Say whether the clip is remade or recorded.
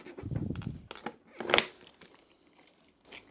recorded